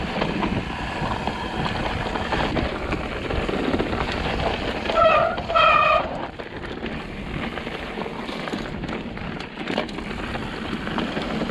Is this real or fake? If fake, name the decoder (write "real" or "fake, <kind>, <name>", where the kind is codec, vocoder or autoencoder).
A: real